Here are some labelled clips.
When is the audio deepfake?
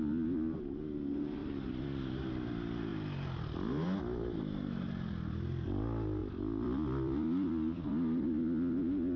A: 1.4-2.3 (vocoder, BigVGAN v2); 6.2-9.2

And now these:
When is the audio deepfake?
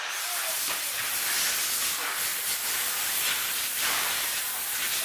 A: 2.3-4.5 (vocoder, BigVGAN v2)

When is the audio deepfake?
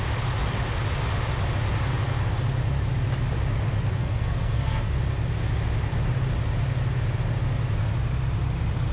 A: 4.0-4.9 (codec, SNAC)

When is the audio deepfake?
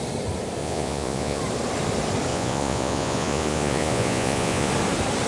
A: 0.6-1.4 (vocoder, Vocos); 2.3-4.7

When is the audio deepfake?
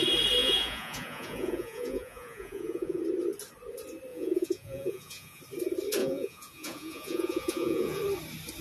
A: 0.4-3.0 (vocoder, Vocos); 4.1-5.4; 6.0-8.0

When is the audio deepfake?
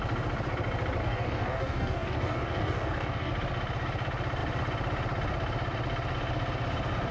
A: 1.0-3.3 (codec, DAC)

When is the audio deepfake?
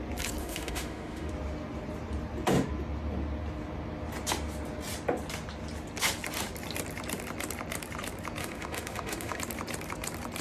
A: 0.4-1.3 (autoencoder, DAC-VAE); 8.4-9.4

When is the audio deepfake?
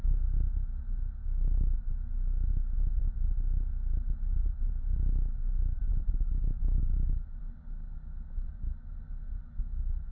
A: 1.2-1.9 (autoencoder, DAC-VAE); 6.8-7.4